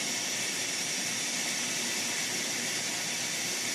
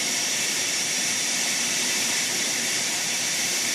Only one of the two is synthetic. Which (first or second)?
second